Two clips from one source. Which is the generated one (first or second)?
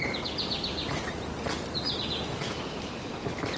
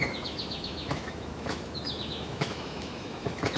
second